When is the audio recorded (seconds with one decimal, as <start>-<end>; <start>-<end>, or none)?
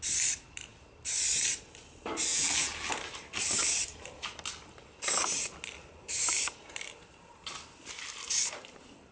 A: 0.0-2.3; 2.9-9.1